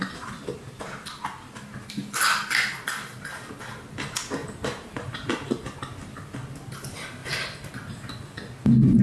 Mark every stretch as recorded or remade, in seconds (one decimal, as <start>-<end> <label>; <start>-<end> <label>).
0.0-4.4 recorded; 4.4-5.8 remade; 5.8-7.2 recorded; 7.2-8.2 remade; 8.2-9.0 recorded